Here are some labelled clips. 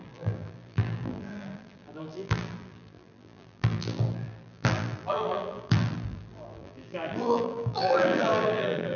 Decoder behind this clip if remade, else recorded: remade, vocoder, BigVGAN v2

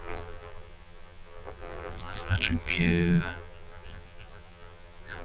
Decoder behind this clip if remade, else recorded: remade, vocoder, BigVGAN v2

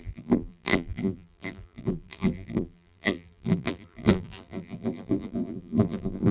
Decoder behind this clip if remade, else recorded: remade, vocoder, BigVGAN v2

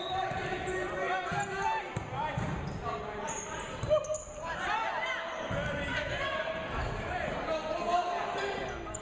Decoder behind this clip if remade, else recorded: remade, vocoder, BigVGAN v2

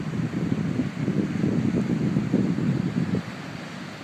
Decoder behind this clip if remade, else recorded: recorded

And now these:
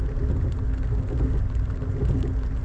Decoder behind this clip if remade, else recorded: recorded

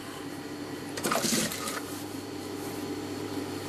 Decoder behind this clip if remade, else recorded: remade, vocoder, BigVGAN v2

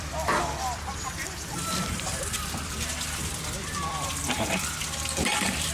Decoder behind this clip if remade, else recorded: remade, vocoder, BigVGAN v2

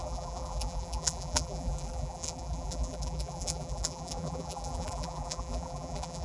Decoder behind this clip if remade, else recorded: remade, vocoder, BigVGAN v2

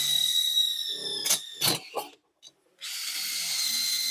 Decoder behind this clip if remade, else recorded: recorded